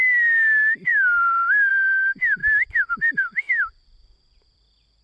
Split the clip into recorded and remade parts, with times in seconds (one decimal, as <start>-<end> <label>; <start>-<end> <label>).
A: 0.0-5.0 recorded